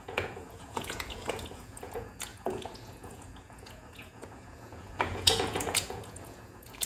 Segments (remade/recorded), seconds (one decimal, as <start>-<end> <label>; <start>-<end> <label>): 0.0-6.9 remade